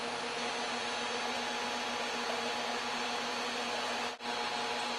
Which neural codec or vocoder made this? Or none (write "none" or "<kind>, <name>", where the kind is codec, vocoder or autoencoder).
none